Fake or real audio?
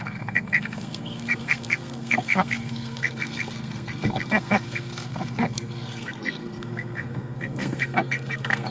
fake